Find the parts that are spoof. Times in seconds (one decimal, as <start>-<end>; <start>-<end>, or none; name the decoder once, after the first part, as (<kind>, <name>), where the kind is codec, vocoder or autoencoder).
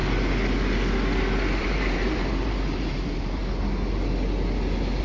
1.6-3.4 (vocoder, BigVGAN v2)